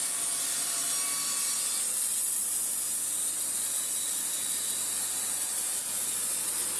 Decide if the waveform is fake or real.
real